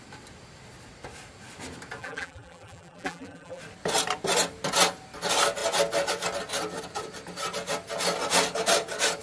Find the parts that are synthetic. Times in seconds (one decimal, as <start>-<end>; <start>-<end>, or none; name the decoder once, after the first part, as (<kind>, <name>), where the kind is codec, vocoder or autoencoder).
2.0-3.6 (vocoder, BigVGAN v2)